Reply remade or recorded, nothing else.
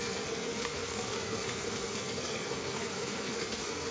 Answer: remade